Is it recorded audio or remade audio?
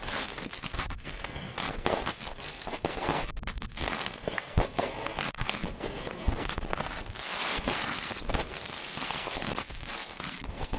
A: remade